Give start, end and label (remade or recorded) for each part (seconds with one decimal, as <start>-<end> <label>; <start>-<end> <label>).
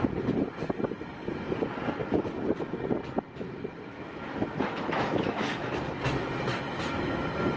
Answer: 0.0-3.9 recorded; 3.9-5.7 remade; 5.7-7.6 recorded